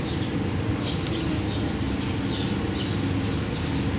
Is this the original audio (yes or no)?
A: yes